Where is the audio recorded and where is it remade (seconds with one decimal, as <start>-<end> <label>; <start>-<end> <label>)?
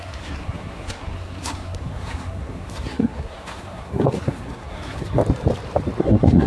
0.0-5.2 remade; 5.2-6.0 recorded; 6.0-6.5 remade